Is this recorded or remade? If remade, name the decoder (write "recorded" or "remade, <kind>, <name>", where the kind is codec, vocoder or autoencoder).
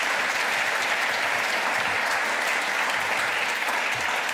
recorded